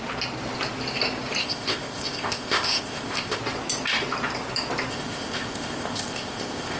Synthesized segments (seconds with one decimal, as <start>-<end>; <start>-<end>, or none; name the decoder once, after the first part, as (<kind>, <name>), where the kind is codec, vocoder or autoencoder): 1.4-3.4 (codec, ZipCodec); 4.9-6.8